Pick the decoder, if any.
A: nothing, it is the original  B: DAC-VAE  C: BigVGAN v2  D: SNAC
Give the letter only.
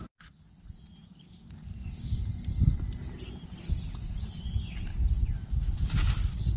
A